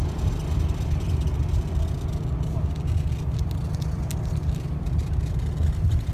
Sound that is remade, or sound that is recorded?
recorded